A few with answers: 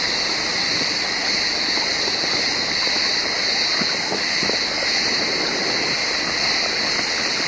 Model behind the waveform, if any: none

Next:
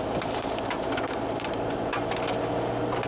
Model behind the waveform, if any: none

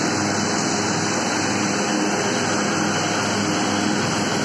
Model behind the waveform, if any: none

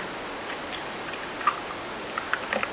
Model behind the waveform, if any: none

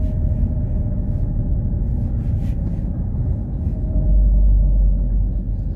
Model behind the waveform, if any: none